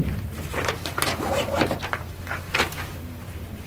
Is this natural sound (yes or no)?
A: no